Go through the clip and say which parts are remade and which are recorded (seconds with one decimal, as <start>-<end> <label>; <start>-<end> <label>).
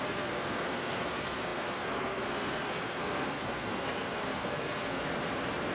0.0-5.0 remade; 5.0-5.7 recorded